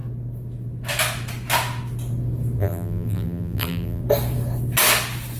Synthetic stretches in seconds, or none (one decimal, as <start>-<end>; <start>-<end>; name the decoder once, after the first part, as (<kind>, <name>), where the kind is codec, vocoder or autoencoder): 2.6-4.0 (vocoder, BigVGAN v2)